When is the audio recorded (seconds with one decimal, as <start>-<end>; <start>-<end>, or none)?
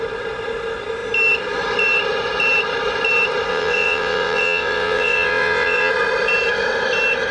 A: 0.0-3.5; 5.9-7.3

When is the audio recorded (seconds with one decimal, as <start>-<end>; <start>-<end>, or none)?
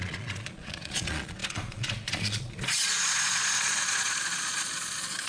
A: none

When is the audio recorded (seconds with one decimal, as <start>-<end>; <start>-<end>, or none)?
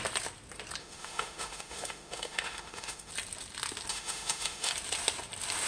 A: 0.0-0.8; 3.1-3.9; 4.7-5.7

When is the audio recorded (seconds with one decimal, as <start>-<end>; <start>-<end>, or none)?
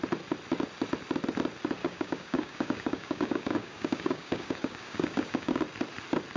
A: 0.0-1.8; 5.6-6.4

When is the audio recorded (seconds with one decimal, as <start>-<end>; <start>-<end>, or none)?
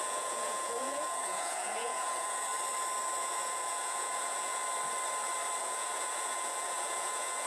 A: 2.5-3.2; 4.6-5.6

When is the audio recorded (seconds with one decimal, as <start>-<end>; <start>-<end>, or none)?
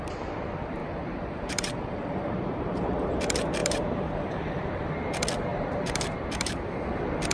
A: 0.0-0.8; 3.2-3.6; 4.9-5.5; 6.7-7.3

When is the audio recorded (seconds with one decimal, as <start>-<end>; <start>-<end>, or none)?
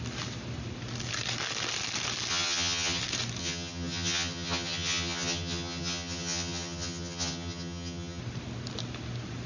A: 0.0-2.3; 3.0-3.4; 8.2-9.5